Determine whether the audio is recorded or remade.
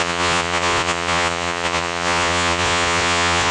remade